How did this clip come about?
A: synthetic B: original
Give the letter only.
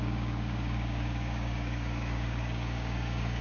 A